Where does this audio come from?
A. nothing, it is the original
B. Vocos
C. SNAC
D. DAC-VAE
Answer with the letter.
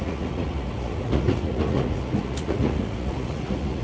B